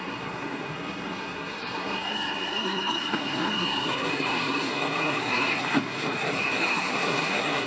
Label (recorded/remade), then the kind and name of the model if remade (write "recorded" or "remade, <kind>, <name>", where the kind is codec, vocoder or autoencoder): remade, codec, SNAC